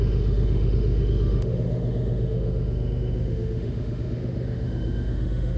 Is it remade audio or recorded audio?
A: remade